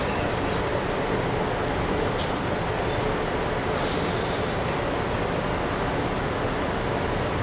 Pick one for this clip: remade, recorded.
recorded